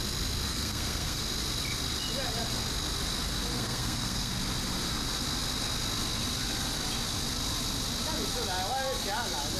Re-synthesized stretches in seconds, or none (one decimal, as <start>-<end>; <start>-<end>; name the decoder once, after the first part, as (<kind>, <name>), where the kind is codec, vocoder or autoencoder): 0.5-1.2 (codec, SNAC); 3.5-4.3